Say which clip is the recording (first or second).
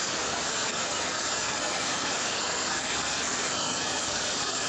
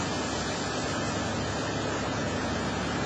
second